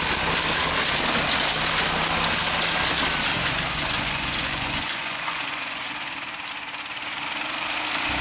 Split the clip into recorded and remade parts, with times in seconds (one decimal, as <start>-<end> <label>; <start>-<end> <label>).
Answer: 0.0-3.3 recorded; 3.3-6.0 remade; 6.0-8.2 recorded